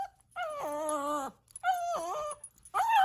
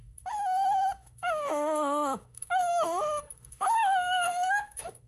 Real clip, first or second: first